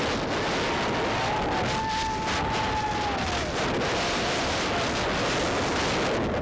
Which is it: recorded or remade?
recorded